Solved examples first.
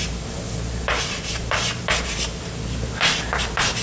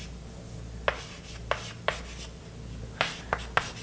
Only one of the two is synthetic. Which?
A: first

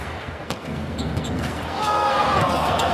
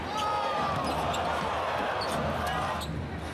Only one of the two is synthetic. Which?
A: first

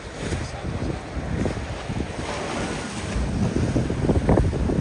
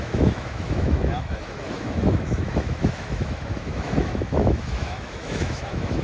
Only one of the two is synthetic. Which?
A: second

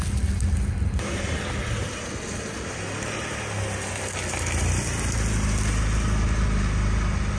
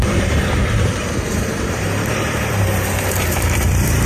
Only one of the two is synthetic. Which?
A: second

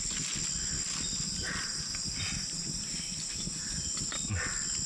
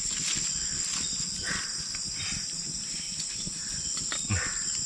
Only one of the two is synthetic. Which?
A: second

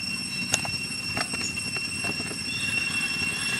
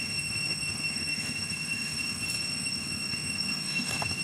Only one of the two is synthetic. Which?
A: second